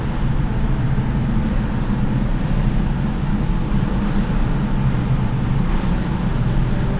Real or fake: real